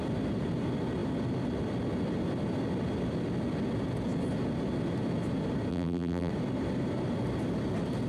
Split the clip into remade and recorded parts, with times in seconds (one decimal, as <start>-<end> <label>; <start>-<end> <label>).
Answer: 0.0-5.7 recorded; 5.7-6.3 remade; 6.3-8.1 recorded